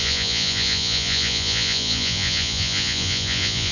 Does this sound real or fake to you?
fake